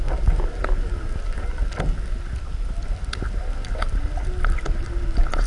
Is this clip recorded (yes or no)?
yes